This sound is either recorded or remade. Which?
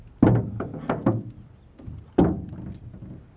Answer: recorded